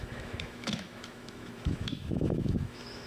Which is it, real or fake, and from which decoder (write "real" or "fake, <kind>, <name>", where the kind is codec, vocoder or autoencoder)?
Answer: fake, autoencoder, DAC-VAE